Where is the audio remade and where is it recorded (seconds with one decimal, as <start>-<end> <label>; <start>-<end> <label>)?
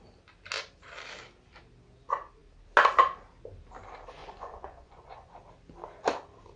0.0-4.2 recorded; 4.2-5.3 remade; 5.3-6.6 recorded